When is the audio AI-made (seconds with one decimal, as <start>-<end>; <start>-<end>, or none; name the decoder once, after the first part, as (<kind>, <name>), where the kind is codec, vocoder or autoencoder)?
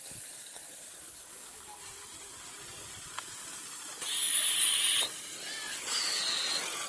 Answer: 5.7-6.2 (codec, HILCodec)